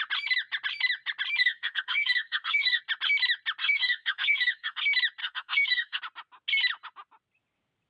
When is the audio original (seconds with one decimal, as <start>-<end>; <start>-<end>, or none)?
0.0-1.4; 2.8-3.6; 4.8-5.2; 6.0-7.9